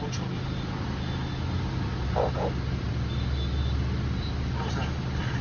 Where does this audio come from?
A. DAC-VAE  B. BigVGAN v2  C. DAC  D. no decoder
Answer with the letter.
D